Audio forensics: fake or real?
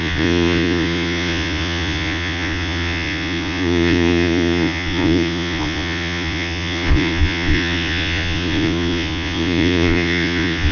fake